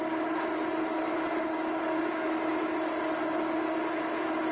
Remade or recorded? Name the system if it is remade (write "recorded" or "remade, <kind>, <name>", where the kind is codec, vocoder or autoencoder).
recorded